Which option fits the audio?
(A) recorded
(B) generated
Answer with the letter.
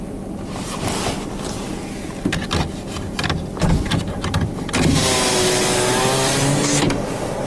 A